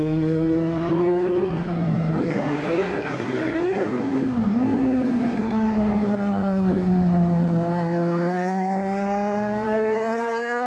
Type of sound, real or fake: fake